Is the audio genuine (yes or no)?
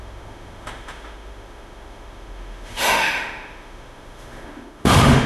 no